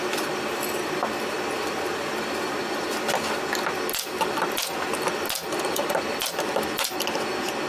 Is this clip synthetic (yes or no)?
no